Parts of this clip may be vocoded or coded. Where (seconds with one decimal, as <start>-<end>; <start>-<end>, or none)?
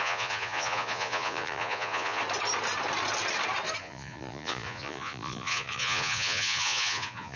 0.0-2.2; 3.8-7.4